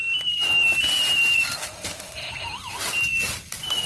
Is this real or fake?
real